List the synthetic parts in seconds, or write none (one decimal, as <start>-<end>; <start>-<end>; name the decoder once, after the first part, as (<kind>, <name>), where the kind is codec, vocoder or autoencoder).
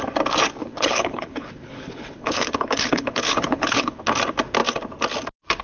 0.6-4.0 (codec, HILCodec)